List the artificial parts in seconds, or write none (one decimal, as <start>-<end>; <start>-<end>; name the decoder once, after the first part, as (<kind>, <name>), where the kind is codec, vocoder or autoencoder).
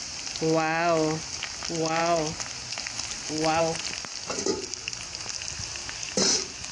none